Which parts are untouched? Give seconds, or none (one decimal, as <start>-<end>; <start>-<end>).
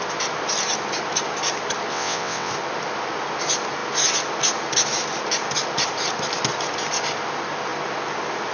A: 0.0-1.9; 2.5-8.5